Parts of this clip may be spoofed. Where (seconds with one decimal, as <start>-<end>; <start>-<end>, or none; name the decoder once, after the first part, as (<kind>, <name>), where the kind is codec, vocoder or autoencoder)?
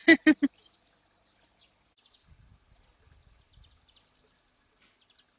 none